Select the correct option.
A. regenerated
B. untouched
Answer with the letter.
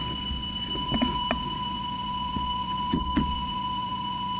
A